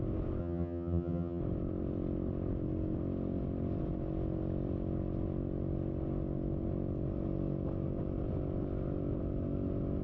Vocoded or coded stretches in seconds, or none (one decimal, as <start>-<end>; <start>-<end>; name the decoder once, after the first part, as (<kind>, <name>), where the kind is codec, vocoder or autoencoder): 0.4-1.4 (vocoder, HiFi-GAN)

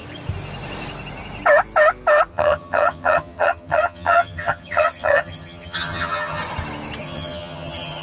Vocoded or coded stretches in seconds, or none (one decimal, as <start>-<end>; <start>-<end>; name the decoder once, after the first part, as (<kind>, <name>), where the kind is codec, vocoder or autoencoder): 2.3-6.4 (vocoder, HiFi-GAN); 7.0-8.0

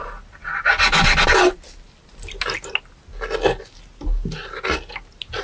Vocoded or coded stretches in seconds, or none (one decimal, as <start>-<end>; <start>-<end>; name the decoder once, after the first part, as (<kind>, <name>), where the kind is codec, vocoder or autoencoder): none

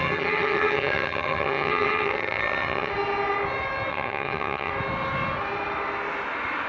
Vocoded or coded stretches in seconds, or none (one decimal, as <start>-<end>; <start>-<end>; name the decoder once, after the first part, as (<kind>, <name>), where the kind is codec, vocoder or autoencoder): 0.0-2.9 (vocoder, HiFi-GAN); 3.9-4.7

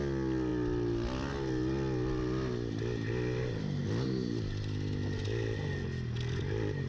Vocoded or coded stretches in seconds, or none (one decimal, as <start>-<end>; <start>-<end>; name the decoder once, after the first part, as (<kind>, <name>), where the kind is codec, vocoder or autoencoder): none

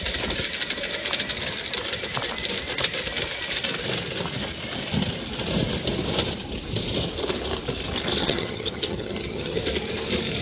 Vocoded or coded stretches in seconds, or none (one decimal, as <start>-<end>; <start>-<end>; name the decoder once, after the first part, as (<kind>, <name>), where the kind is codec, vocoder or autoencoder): 8.2-9.6 (vocoder, HiFi-GAN)